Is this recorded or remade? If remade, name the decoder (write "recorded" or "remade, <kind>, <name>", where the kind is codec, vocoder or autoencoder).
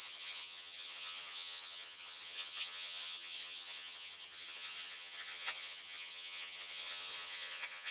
remade, vocoder, HiFi-GAN